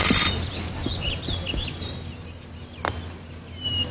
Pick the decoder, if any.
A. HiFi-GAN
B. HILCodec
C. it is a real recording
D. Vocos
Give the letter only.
C